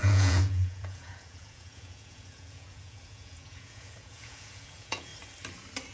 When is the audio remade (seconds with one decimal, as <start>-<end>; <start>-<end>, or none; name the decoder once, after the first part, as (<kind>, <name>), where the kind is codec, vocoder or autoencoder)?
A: 0.0-5.1 (vocoder, Vocos)